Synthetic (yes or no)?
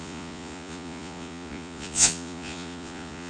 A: yes